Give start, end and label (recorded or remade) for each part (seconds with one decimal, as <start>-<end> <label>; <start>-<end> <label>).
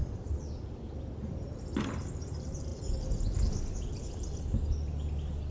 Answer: 0.0-5.5 recorded